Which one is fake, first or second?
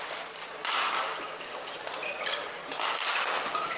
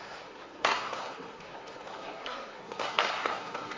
second